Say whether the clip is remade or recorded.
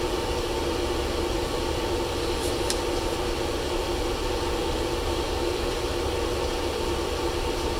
recorded